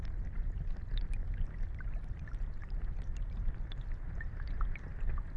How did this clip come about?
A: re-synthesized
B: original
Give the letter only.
B